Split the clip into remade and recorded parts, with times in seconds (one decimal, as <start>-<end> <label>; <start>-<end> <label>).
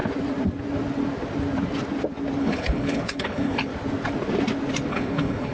0.0-2.4 recorded; 2.4-3.7 remade; 3.7-4.9 recorded; 4.9-5.5 remade